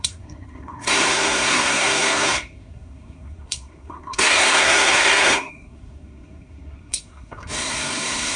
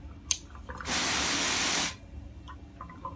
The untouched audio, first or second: second